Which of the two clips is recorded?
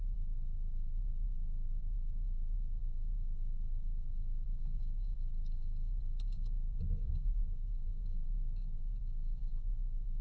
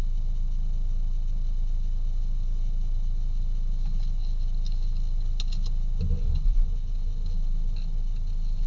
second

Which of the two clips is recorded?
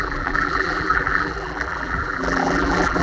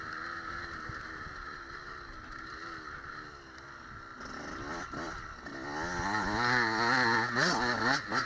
second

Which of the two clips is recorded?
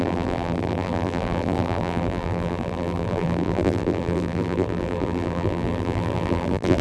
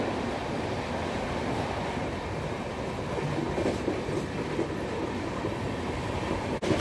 second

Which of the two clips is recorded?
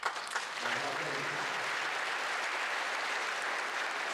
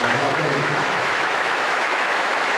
first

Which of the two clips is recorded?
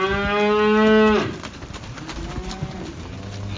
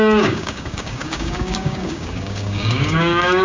first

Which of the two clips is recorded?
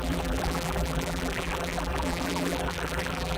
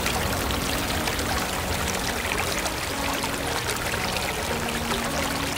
second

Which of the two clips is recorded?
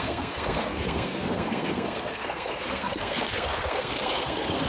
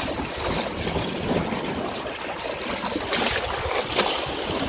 second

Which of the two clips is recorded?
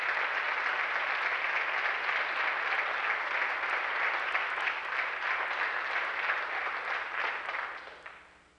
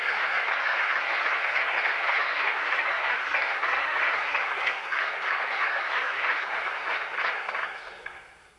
first